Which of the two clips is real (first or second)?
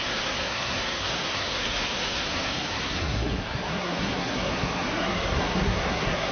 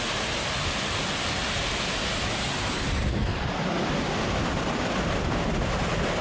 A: second